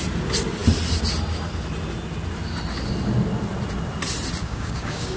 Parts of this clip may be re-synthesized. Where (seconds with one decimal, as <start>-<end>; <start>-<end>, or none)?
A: 4.4-5.2